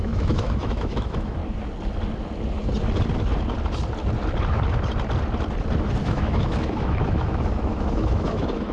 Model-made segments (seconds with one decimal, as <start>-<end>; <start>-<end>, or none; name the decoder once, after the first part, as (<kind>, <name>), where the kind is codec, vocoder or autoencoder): 0.0-1.4 (autoencoder, DAC-VAE); 6.0-8.7